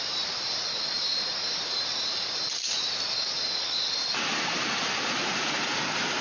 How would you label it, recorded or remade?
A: remade